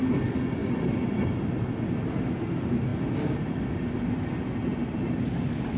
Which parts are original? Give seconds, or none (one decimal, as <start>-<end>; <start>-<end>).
0.0-5.8

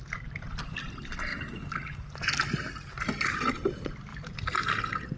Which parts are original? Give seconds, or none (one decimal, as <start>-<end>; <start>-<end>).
1.3-3.1; 4.1-5.2

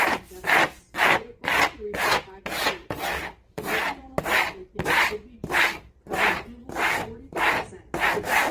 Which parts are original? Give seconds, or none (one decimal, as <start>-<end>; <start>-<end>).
5.4-7.7

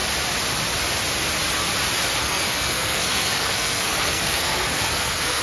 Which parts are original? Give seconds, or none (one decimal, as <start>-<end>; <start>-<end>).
0.0-2.2